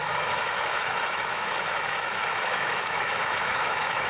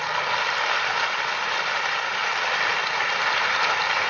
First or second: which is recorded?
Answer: second